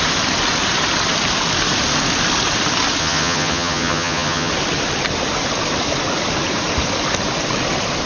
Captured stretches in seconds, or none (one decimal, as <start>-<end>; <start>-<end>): 0.0-3.0; 4.5-8.1